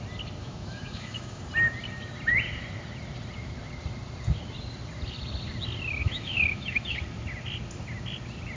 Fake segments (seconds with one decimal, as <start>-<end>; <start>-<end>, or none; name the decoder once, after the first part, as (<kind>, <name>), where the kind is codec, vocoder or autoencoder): 0.4-1.4 (autoencoder, DAC-VAE); 6.0-7.0

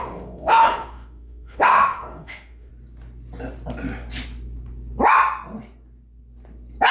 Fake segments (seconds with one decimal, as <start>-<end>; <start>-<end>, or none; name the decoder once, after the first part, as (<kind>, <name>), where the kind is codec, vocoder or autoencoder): 0.0-2.7 (autoencoder, DAC-VAE)

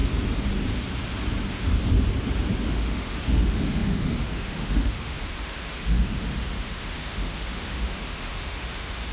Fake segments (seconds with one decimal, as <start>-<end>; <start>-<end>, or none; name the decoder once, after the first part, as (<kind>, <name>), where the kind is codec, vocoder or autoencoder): 2.7-9.1 (autoencoder, DAC-VAE)

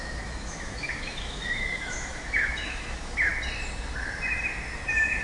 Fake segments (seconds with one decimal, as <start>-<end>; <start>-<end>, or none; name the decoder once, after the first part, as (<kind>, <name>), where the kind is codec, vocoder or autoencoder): 0.0-3.3 (autoencoder, DAC-VAE)

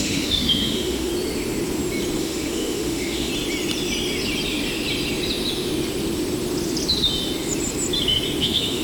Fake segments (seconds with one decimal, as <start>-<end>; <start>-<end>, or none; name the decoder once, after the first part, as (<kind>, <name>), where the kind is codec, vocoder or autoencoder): 0.0-1.1 (autoencoder, DAC-VAE); 2.2-3.3; 8.4-8.8